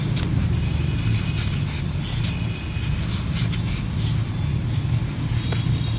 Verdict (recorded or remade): recorded